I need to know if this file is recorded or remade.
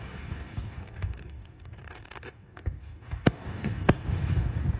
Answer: remade